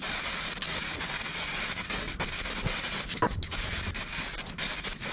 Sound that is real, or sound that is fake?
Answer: real